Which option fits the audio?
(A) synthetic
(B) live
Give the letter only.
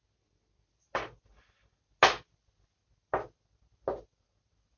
B